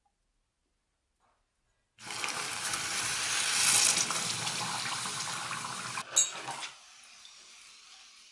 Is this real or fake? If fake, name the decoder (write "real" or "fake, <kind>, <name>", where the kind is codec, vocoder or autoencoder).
real